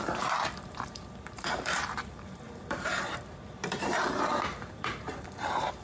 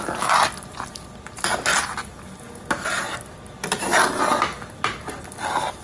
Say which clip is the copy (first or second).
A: first